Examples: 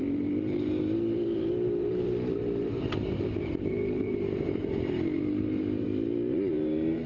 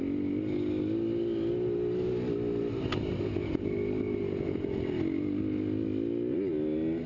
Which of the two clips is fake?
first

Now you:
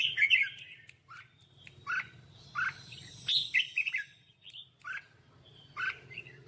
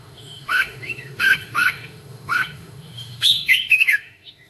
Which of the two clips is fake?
second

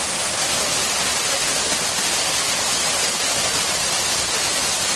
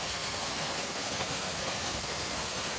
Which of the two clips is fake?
second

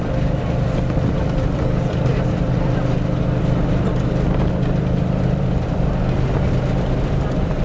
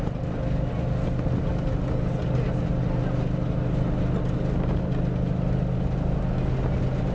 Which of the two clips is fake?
first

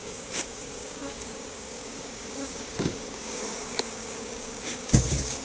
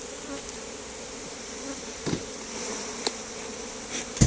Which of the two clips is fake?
first